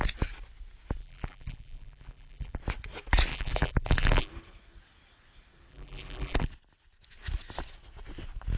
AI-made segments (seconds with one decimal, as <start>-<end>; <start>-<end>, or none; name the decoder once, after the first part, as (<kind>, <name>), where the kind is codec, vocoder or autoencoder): 1.0-2.6 (vocoder, BigVGAN v2); 3.3-4.3; 5.7-6.5